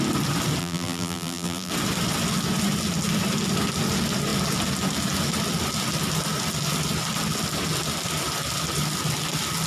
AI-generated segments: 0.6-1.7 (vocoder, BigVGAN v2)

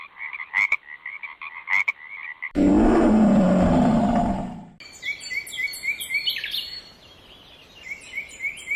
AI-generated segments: 0.0-2.7 (vocoder, BigVGAN v2); 5.7-8.8

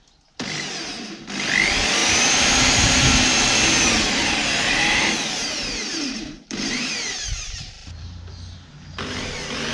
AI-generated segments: 4.4-8.7 (vocoder, BigVGAN v2)

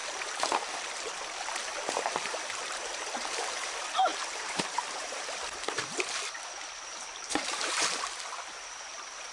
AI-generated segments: 0.0-0.6 (vocoder, BigVGAN v2); 1.7-5.4; 6.9-7.7